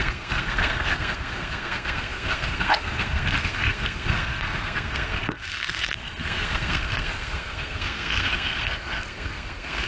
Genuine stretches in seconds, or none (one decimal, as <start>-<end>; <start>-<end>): none